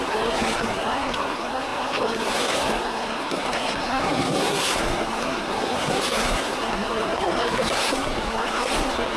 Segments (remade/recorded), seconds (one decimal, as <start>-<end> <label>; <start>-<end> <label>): 0.0-9.2 remade